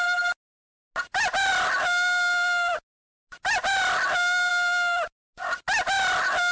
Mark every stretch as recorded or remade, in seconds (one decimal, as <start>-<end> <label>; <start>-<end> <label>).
0.0-6.5 recorded